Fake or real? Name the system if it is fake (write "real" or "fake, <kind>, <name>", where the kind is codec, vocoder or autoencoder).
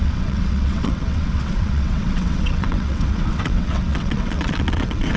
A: fake, vocoder, WaveNeXt